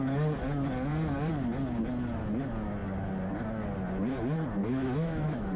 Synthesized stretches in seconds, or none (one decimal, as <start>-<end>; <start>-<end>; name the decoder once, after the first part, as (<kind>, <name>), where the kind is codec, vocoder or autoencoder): 4.6-5.6 (autoencoder, DAC-VAE)